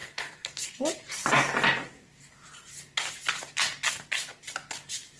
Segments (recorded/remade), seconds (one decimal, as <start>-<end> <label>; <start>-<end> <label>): 0.0-0.7 remade; 0.7-5.2 recorded